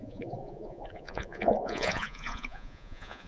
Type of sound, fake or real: fake